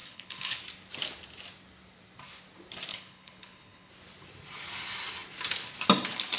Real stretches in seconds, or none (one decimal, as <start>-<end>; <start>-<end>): 0.6-2.9; 3.9-6.4